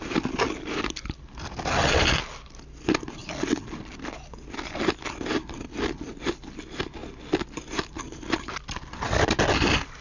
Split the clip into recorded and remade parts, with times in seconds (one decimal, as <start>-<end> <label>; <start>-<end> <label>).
0.0-10.0 recorded